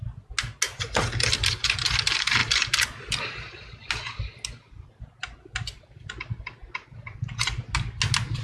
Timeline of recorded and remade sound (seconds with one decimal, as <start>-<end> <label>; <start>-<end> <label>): 0.0-8.4 recorded